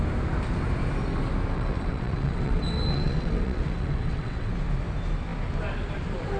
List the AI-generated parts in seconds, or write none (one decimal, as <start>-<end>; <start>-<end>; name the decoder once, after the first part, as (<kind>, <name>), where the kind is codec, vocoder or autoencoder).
1.5-4.5 (vocoder, WaveNeXt)